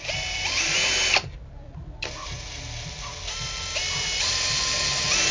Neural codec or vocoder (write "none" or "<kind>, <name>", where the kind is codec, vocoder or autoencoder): vocoder, BigVGAN v2